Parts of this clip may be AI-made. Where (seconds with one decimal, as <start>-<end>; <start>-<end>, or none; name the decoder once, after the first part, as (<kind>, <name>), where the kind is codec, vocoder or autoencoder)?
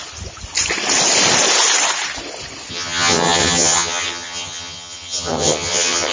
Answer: 2.7-6.1 (vocoder, HiFi-GAN)